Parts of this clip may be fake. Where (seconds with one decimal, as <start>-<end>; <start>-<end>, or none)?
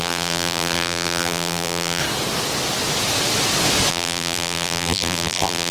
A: 0.0-2.0; 3.9-5.7